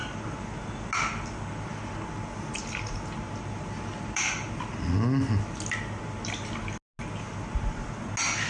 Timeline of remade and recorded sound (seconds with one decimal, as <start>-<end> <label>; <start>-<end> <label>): 0.0-8.5 recorded